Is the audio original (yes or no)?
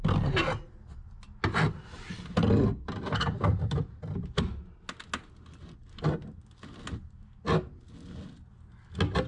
yes